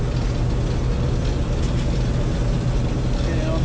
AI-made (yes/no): no